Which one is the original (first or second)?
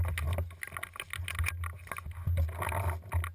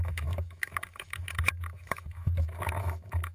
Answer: first